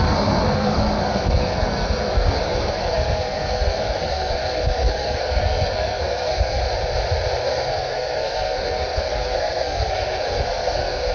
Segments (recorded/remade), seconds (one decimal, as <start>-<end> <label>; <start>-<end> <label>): 0.0-6.6 remade; 6.6-7.4 recorded; 7.4-11.1 remade